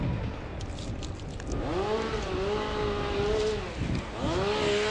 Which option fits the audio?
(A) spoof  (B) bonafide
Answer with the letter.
B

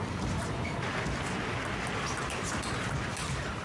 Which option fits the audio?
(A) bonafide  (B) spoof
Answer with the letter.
A